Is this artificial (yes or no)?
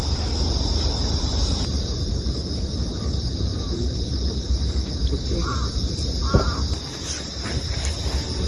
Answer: yes